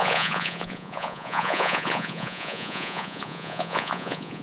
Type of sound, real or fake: fake